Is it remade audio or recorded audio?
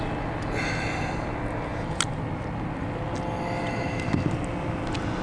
recorded